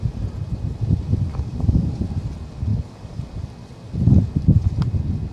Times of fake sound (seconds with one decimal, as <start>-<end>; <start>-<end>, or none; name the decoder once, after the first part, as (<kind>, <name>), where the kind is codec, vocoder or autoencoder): 1.3-2.0 (codec, DAC); 2.7-3.2